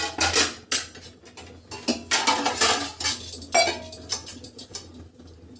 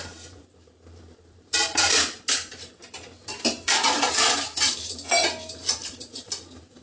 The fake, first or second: second